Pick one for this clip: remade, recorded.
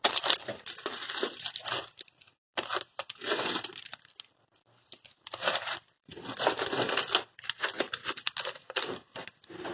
recorded